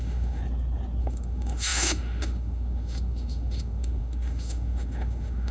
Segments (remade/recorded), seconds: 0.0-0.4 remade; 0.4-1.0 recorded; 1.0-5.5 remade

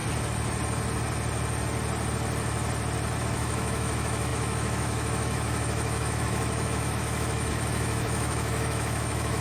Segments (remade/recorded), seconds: 0.0-3.2 recorded; 3.2-9.4 remade

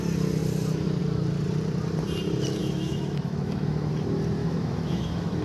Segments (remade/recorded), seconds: 0.0-2.6 recorded; 2.6-3.9 remade; 3.9-4.4 recorded; 4.4-5.4 remade